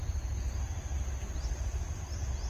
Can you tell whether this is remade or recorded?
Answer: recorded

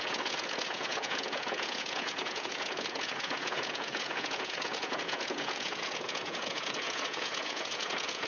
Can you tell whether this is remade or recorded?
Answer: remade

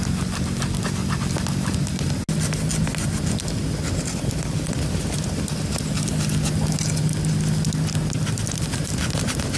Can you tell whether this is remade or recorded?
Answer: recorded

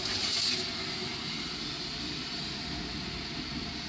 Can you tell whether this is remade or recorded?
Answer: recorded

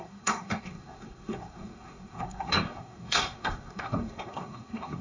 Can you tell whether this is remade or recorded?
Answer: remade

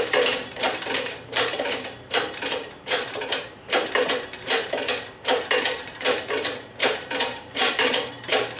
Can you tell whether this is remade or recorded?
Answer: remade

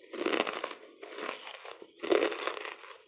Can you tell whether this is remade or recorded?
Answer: recorded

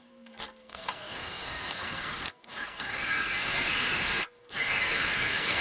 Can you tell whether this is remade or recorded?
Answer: remade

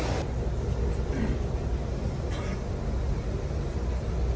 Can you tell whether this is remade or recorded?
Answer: recorded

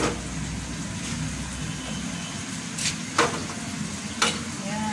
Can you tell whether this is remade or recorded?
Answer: recorded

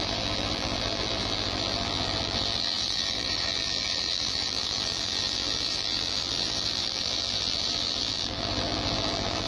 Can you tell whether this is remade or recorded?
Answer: remade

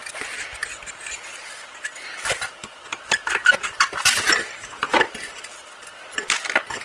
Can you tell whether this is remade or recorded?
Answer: recorded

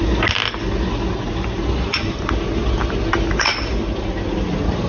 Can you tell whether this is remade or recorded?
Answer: recorded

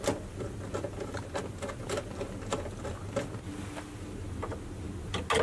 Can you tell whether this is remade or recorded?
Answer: recorded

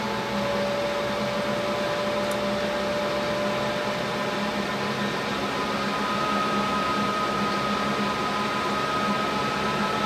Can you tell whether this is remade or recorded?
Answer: recorded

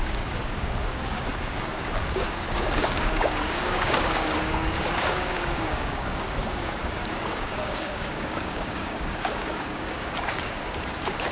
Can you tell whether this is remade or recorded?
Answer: remade